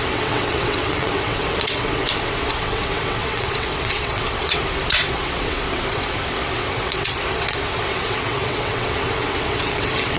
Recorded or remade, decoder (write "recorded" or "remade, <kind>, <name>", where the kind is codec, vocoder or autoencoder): remade, vocoder, WaveNeXt